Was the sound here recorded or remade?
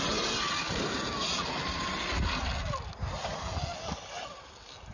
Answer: recorded